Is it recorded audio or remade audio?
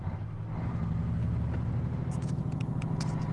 recorded